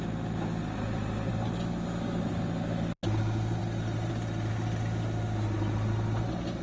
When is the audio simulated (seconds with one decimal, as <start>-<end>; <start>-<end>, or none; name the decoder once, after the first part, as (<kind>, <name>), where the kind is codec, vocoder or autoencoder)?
none